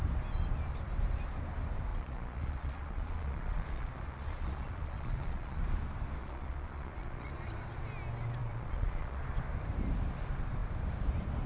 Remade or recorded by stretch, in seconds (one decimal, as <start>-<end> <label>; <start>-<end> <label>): 0.0-1.9 recorded; 1.9-5.6 remade; 5.6-6.2 recorded; 6.2-7.3 remade; 7.3-8.4 recorded; 8.4-9.2 remade; 9.2-11.5 recorded